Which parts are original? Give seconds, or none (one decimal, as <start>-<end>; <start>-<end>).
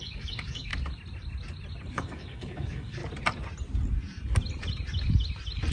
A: 0.7-1.9; 3.0-5.7